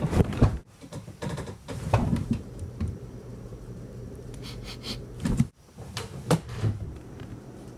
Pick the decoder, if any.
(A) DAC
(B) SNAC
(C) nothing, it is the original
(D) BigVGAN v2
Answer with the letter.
D